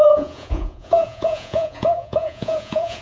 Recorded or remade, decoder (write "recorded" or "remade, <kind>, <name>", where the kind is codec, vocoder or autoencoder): remade, vocoder, Vocos